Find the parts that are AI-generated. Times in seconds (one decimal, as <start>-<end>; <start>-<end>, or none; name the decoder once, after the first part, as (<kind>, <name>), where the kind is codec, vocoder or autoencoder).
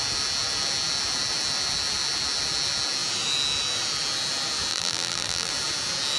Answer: 4.7-5.5 (vocoder, BigVGAN v2)